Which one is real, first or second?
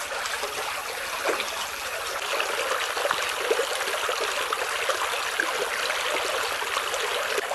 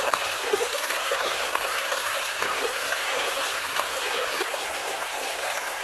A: first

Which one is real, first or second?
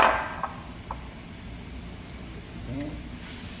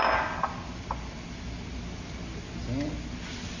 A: second